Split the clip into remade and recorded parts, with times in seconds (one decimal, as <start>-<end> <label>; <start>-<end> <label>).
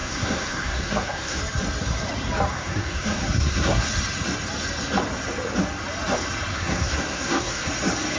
0.0-1.4 remade; 1.4-2.5 recorded; 2.5-3.9 remade; 3.9-6.5 recorded; 6.5-7.7 remade; 7.7-8.2 recorded